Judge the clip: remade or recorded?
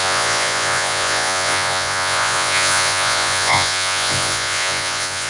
remade